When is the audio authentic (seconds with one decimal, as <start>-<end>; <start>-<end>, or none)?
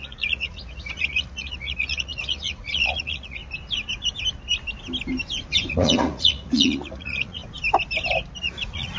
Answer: 3.4-5.7; 7.4-8.4